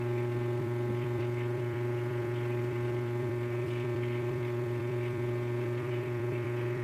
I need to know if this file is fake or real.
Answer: fake